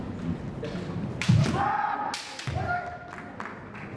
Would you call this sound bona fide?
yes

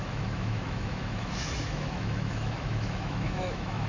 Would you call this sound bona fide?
no